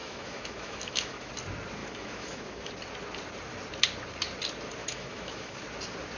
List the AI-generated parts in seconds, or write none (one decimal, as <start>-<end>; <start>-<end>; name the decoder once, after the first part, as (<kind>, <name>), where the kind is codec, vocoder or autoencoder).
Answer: 0.0-1.3 (autoencoder, DAC-VAE); 1.8-2.7; 4.8-5.6